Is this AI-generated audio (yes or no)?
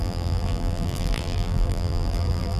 yes